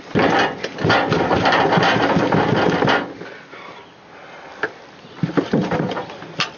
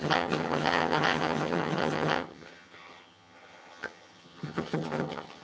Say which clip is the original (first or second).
first